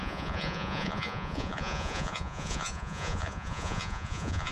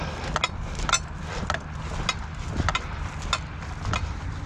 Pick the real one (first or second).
second